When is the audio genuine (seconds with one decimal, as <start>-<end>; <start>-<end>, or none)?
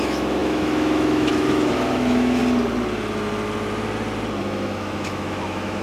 2.4-4.4